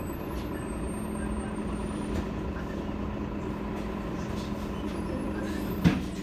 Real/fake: real